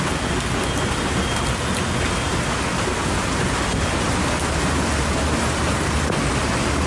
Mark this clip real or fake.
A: real